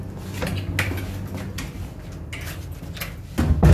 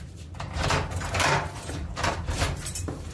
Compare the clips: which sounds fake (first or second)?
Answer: second